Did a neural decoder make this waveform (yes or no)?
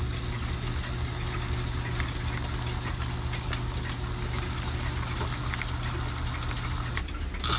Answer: no